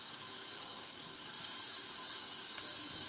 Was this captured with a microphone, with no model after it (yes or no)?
no